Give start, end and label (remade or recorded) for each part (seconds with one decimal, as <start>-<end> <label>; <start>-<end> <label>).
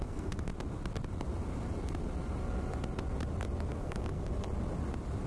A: 0.0-0.5 remade; 0.5-3.7 recorded; 3.7-4.3 remade; 4.3-5.3 recorded